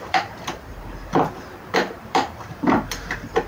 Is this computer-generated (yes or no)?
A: yes